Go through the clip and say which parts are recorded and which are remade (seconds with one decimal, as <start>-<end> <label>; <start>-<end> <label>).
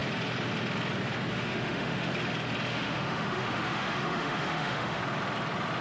0.0-1.3 recorded; 1.3-2.1 remade; 2.1-2.7 recorded; 2.7-5.0 remade; 5.0-5.8 recorded